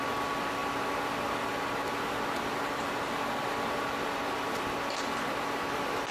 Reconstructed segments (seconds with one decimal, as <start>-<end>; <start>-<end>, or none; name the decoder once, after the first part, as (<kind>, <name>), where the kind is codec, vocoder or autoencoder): none